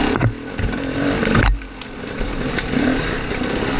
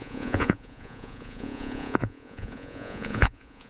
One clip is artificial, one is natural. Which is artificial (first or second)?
second